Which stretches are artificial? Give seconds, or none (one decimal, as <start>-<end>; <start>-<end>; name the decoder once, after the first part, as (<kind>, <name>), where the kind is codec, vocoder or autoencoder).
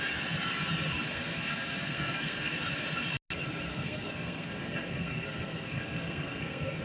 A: 1.1-2.5 (codec, SNAC); 3.7-6.8